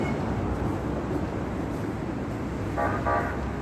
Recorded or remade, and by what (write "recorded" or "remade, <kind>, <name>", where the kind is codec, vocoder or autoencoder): recorded